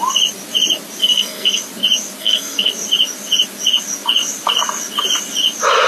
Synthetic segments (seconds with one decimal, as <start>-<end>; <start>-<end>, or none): 1.0-1.6; 2.2-2.7